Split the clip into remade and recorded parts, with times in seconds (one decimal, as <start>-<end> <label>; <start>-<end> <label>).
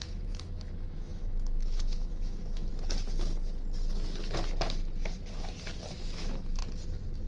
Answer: 0.0-2.7 remade; 2.7-5.9 recorded; 5.9-6.6 remade; 6.6-7.3 recorded